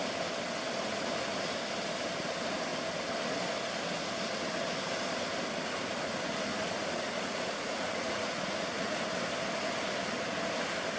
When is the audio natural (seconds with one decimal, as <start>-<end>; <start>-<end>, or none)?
0.0-6.5; 9.0-11.0